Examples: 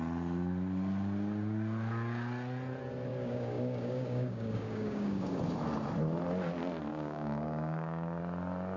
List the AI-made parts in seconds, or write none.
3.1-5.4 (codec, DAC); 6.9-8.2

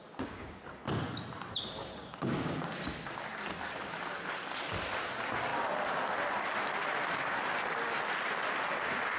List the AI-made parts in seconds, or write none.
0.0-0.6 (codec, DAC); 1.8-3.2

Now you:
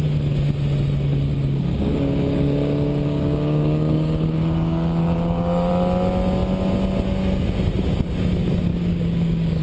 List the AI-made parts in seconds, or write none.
1.3-5.7 (codec, DAC); 8.7-9.6

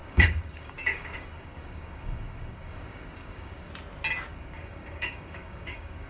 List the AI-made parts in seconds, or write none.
0.0-3.7 (codec, DAC); 4.3-6.1

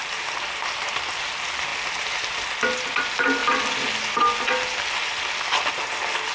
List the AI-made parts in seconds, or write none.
none